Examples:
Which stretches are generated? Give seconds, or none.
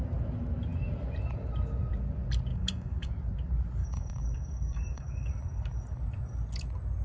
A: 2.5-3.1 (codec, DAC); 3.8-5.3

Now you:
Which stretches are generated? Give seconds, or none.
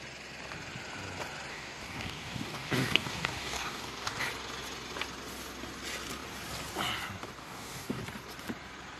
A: 1.5-4.2 (codec, DAC); 7.4-8.0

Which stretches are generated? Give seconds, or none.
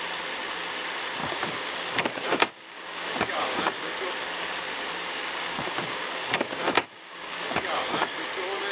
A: 1.2-3.9 (codec, DAC); 4.3-8.2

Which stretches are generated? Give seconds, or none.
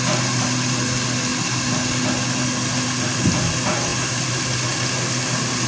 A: none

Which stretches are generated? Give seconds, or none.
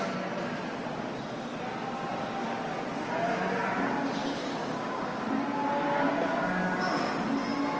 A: 4.2-5.2 (codec, DAC)